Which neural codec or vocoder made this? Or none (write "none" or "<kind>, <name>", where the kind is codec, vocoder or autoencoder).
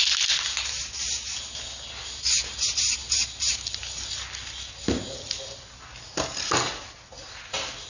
none